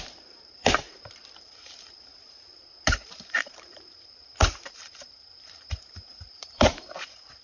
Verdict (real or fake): fake